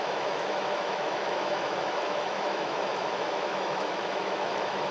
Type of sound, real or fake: fake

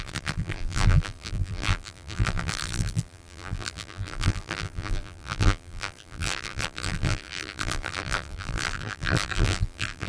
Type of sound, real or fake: fake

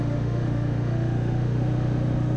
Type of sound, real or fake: fake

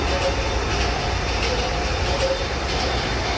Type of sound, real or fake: real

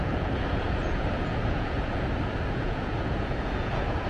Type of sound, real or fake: fake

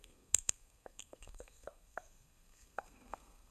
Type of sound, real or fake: fake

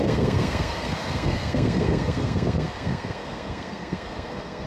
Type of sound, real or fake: fake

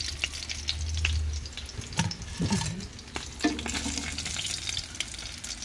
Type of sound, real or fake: real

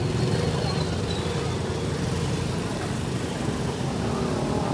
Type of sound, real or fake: fake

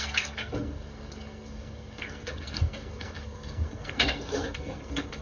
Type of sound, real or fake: fake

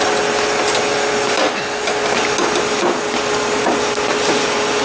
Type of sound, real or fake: real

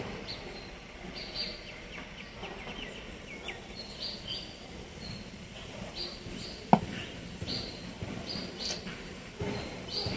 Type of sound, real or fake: real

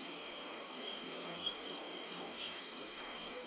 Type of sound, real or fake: fake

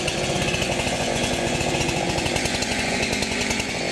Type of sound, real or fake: fake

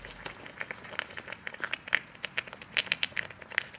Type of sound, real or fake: real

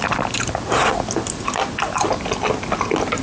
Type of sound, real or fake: real